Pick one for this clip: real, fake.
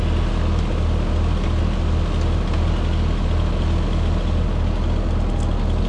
real